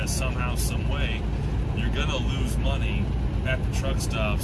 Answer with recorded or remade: recorded